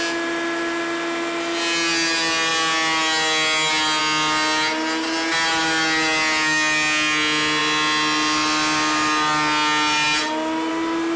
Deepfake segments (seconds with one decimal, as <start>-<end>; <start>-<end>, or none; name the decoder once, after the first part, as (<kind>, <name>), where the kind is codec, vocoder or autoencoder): none